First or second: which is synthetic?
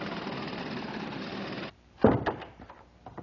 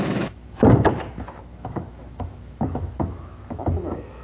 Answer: second